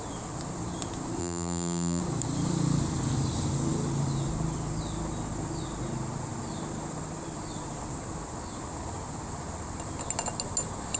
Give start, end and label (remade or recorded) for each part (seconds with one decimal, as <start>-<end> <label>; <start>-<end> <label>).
0.0-1.2 recorded; 1.2-2.0 remade; 2.0-11.0 recorded